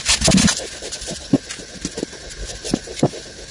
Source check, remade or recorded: recorded